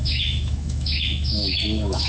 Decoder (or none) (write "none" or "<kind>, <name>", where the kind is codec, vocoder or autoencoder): autoencoder, DAC-VAE